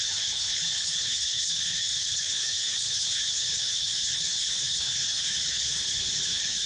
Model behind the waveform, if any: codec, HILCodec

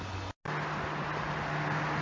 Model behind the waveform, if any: none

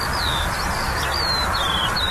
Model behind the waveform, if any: none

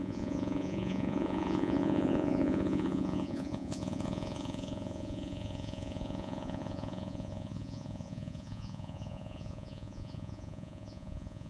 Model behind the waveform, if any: vocoder, Vocos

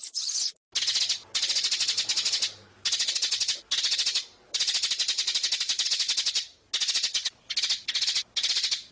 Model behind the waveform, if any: none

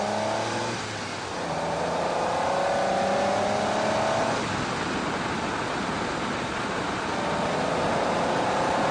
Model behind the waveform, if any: none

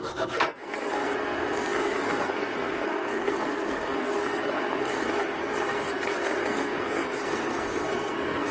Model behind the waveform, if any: codec, SNAC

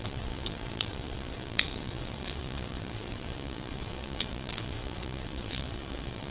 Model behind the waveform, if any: vocoder, WaveNeXt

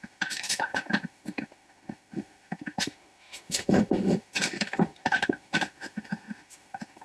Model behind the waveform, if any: autoencoder, DAC-VAE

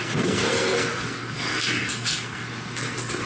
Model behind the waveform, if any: codec, SNAC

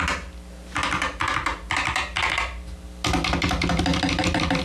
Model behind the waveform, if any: none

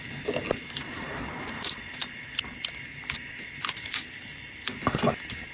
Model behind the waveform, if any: none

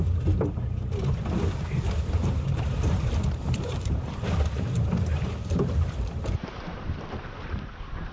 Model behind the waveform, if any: vocoder, BigVGAN v2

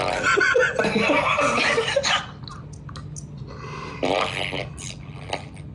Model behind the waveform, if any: none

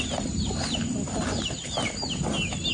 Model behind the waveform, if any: none